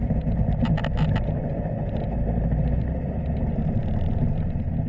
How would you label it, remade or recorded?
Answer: recorded